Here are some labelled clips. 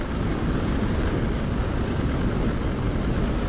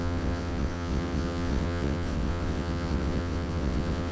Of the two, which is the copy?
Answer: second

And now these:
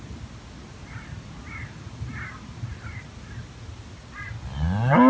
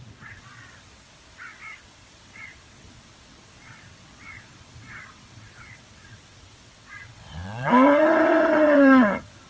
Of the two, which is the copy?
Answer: second